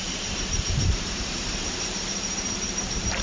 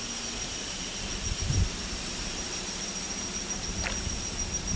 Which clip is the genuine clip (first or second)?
second